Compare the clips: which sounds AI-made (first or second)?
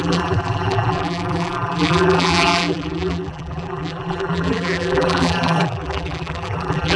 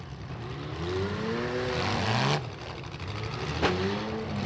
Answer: first